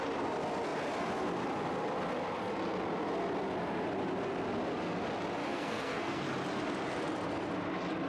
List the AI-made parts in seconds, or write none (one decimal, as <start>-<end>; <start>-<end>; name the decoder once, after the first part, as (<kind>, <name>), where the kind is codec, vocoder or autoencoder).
5.4-6.2 (codec, SNAC)

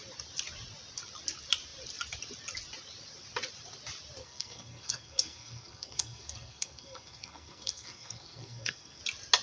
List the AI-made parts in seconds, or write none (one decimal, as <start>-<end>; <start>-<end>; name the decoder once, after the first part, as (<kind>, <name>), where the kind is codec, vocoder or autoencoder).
4.2-9.0 (codec, SNAC)